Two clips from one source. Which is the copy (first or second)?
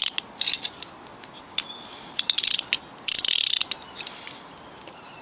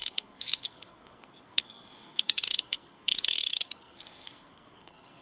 second